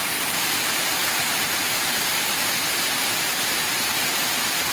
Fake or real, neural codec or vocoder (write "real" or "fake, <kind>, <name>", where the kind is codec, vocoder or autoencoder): fake, vocoder, BigVGAN v2